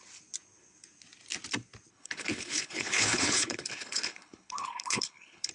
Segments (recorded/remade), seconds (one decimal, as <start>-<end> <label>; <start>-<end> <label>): 0.0-1.9 recorded; 1.9-5.5 remade